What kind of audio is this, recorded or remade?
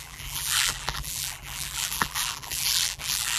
remade